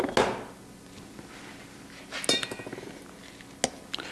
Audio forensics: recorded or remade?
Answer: recorded